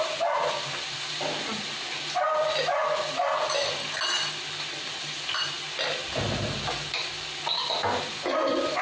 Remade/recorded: recorded